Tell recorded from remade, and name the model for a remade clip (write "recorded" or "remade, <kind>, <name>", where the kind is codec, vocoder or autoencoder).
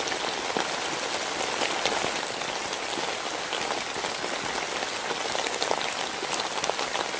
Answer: recorded